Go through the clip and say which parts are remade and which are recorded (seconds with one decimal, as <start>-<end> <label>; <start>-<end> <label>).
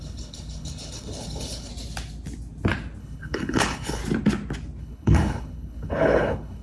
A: 0.0-1.7 remade; 1.7-3.0 recorded; 3.0-4.0 remade; 4.0-4.8 recorded; 4.8-6.6 remade